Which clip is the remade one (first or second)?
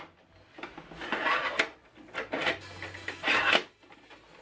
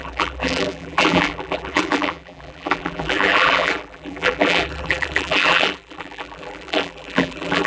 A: second